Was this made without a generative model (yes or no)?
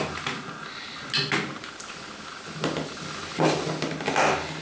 yes